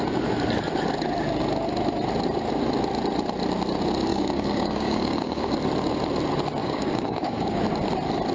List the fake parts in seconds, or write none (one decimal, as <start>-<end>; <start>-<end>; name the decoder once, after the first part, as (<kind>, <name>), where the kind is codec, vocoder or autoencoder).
4.1-5.5 (codec, DAC); 6.6-7.6